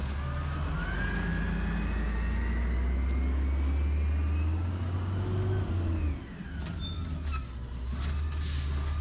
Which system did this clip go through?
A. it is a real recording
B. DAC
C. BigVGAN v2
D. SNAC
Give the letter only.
A